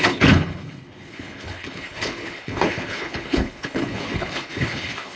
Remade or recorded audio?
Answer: remade